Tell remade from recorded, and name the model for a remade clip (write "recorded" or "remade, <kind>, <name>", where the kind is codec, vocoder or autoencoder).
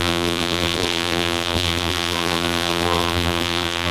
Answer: remade, vocoder, BigVGAN v2